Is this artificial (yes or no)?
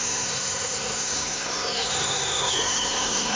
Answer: yes